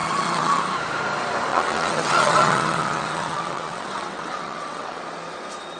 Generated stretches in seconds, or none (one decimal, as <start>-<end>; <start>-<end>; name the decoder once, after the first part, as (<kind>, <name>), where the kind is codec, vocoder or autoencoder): 0.0-0.6 (vocoder, WaveNeXt); 1.5-5.0